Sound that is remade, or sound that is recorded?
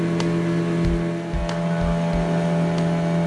recorded